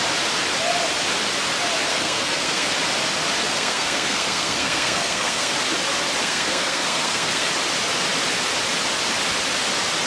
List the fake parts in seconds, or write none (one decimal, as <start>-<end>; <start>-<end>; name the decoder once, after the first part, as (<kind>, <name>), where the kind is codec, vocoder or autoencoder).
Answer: 1.9-2.7 (codec, SNAC); 3.4-5.5; 6.2-7.5